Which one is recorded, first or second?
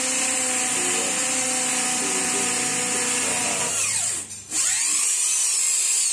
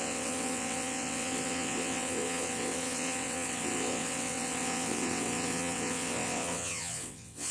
first